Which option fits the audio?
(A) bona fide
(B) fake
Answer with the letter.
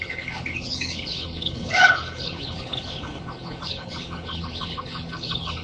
B